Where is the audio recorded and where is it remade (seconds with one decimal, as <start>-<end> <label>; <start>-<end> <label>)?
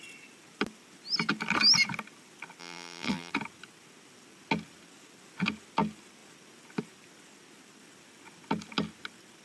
0.0-2.6 recorded; 2.6-3.3 remade; 3.3-9.4 recorded